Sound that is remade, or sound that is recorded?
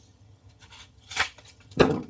remade